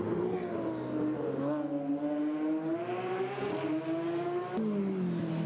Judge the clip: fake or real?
real